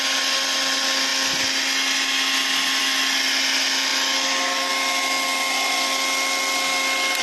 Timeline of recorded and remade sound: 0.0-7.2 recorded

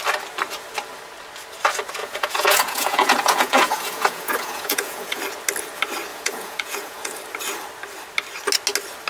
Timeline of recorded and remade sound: 0.0-2.0 recorded; 2.0-5.2 remade; 5.2-6.1 recorded; 6.1-7.1 remade; 7.1-9.1 recorded